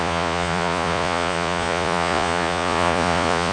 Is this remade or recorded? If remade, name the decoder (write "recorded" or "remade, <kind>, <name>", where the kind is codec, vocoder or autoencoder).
remade, vocoder, Vocos